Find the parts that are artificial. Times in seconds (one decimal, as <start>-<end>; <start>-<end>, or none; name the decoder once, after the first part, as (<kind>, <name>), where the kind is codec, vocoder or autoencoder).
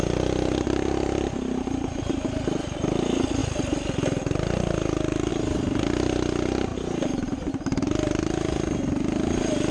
6.7-7.5 (vocoder, BigVGAN v2)